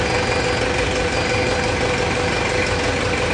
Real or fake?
real